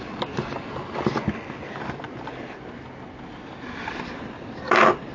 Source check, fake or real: real